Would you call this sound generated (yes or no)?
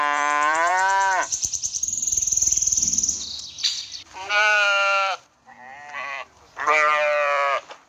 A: yes